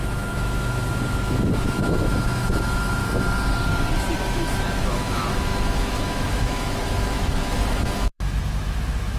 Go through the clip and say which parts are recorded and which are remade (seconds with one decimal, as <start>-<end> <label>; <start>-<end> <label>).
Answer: 0.0-3.0 remade; 3.0-4.2 recorded; 4.2-9.2 remade